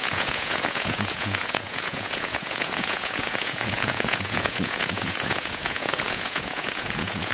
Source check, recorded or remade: remade